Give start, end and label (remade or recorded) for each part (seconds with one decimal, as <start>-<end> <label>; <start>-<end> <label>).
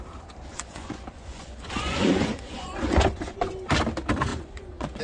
0.0-0.5 recorded; 0.5-3.5 remade; 3.5-4.3 recorded; 4.3-5.0 remade